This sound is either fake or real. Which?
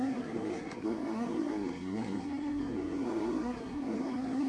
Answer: fake